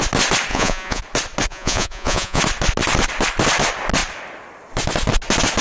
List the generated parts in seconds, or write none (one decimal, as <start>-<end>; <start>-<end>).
0.5-1.0; 1.5-2.4